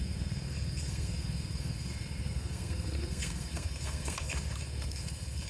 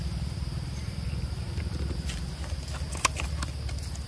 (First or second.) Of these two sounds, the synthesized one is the first